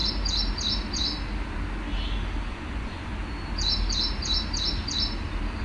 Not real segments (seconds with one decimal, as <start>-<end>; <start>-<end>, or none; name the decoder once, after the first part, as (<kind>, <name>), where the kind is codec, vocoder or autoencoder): 2.5-3.1 (vocoder, Vocos)